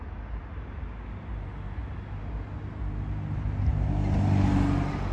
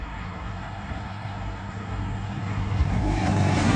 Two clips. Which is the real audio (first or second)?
first